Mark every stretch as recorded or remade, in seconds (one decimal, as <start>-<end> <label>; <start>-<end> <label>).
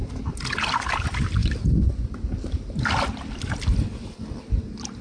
0.0-5.0 recorded